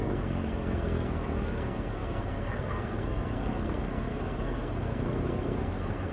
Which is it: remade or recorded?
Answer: remade